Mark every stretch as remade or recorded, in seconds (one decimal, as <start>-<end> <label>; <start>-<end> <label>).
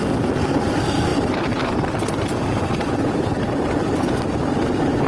0.0-1.1 recorded; 1.1-4.2 remade; 4.2-5.1 recorded